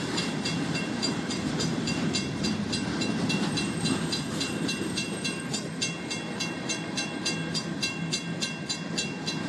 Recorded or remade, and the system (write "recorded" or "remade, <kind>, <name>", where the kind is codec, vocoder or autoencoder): remade, vocoder, BigVGAN v2